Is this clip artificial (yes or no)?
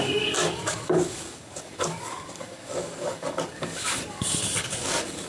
yes